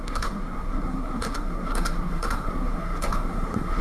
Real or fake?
fake